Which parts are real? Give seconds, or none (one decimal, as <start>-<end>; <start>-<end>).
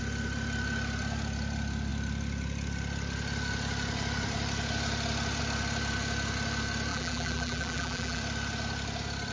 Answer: 0.0-6.9; 8.2-9.3